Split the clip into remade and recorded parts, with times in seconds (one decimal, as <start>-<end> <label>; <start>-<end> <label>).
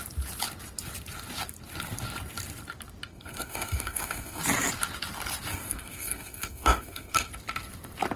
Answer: 0.0-3.1 recorded; 3.1-4.4 remade; 4.4-5.5 recorded; 5.5-7.3 remade; 7.3-8.2 recorded